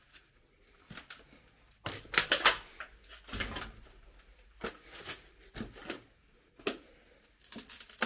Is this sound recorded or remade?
recorded